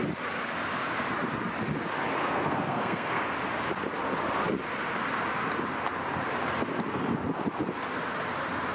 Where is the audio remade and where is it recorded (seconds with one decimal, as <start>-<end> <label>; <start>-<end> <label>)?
0.0-2.2 recorded; 2.2-3.2 remade; 3.2-8.7 recorded

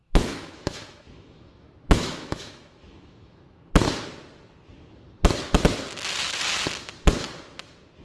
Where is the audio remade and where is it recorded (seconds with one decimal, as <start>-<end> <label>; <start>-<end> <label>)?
0.0-3.7 remade; 3.7-8.0 recorded

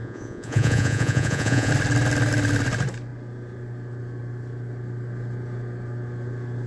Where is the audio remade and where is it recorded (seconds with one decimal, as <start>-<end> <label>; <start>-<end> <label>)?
0.0-1.7 remade; 1.7-6.7 recorded